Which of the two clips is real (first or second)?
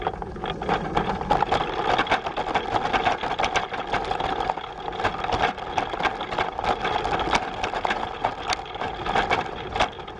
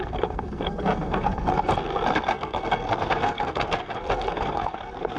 first